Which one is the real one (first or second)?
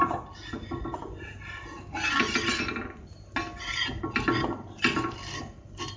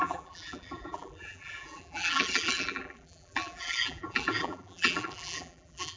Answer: first